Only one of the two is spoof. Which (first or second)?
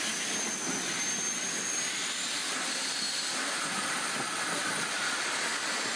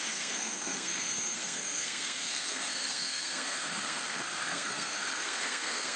second